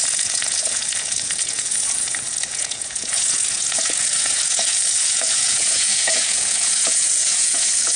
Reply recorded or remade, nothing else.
remade